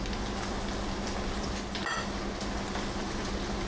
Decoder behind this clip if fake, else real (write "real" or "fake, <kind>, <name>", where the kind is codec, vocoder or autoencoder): real